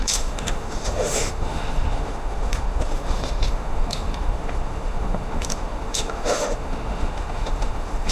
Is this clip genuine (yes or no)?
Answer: no